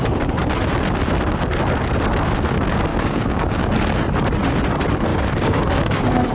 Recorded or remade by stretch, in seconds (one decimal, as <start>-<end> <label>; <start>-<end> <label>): 0.0-2.9 recorded; 2.9-3.7 remade; 3.7-5.1 recorded; 5.1-6.3 remade